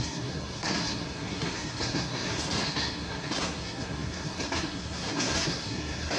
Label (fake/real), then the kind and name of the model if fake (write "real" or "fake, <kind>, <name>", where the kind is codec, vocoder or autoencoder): fake, codec, SNAC